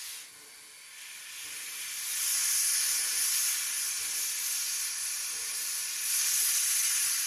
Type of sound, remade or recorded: recorded